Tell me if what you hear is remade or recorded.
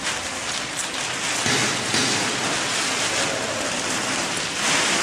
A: recorded